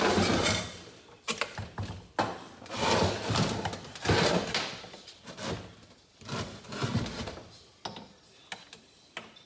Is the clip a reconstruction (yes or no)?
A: no